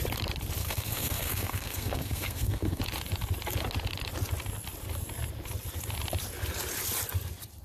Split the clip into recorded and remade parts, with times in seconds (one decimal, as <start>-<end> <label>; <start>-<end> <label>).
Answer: 0.0-0.6 recorded; 0.6-2.8 remade; 2.8-7.6 recorded